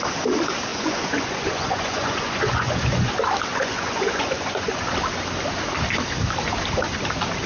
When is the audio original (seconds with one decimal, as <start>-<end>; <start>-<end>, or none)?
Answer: 0.0-0.7; 3.1-3.5; 4.7-7.5